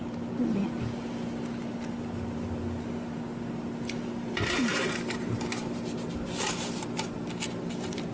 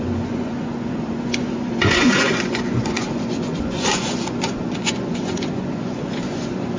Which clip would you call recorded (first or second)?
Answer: first